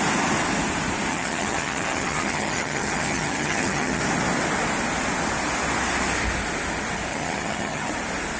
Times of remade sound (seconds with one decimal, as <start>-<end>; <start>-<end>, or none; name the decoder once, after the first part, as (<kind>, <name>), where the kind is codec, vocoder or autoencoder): 1.1-4.0 (vocoder, HiFi-GAN); 7.1-7.9